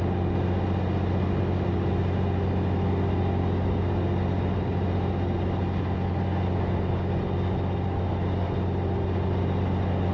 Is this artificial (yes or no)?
no